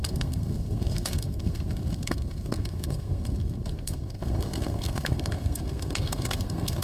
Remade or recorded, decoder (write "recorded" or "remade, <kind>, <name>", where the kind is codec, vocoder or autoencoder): remade, codec, SNAC